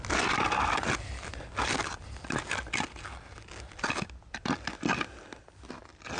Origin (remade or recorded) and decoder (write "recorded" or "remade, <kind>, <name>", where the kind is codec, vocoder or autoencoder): recorded